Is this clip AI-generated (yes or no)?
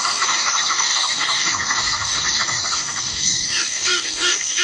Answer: yes